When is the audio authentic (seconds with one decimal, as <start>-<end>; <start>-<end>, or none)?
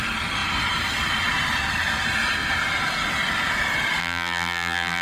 0.0-4.0